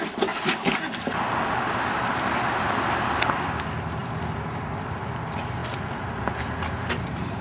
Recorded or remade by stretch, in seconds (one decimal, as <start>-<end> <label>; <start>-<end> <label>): 0.0-4.0 recorded; 4.0-4.7 remade; 4.7-7.4 recorded